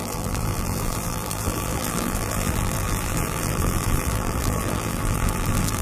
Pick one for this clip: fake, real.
fake